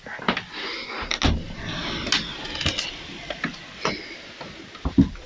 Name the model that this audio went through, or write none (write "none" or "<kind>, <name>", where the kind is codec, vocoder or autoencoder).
none